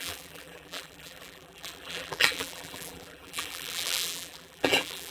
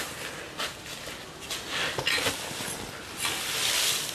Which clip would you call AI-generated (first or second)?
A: first